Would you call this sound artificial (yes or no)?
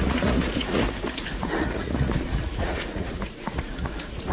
yes